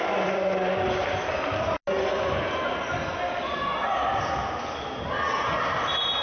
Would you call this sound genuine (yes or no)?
yes